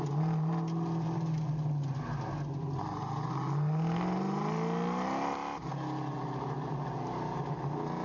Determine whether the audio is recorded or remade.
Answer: recorded